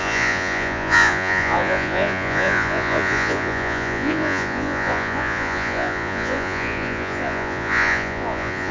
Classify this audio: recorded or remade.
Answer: remade